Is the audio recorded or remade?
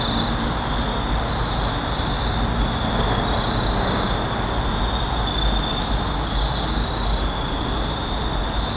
recorded